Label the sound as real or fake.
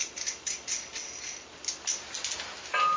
real